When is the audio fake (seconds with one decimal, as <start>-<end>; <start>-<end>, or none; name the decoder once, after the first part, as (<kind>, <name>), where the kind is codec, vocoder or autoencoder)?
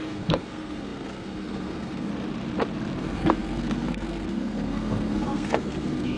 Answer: 0.0-2.1 (codec, SNAC); 3.0-6.2